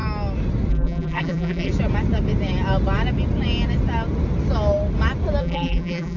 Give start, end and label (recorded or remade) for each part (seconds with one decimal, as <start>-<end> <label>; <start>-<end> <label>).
0.0-0.7 recorded; 0.7-1.7 remade; 1.7-5.4 recorded; 5.4-6.2 remade